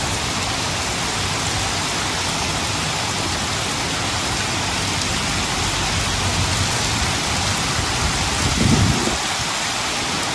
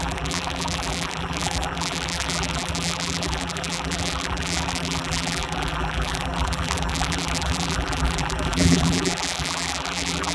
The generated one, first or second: second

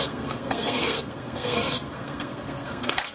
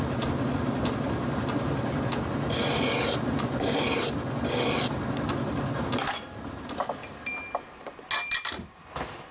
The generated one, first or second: first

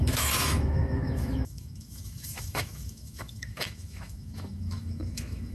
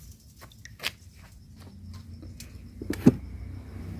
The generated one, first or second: first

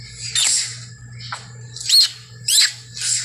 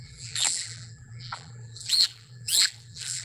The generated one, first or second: second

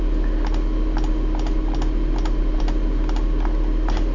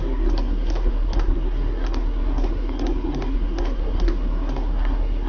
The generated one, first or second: second